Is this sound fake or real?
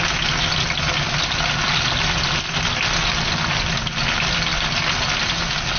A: real